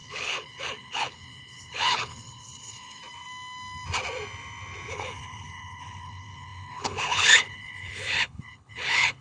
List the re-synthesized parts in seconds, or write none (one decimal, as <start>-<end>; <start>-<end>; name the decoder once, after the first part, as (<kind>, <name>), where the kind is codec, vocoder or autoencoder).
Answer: 0.0-3.0 (codec, HILCodec); 4.9-9.2